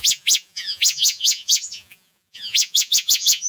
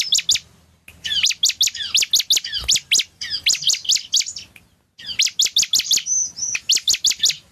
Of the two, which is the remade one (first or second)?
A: first